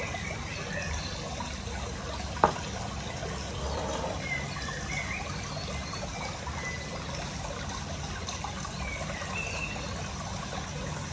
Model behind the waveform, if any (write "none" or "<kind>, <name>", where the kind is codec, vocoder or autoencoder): none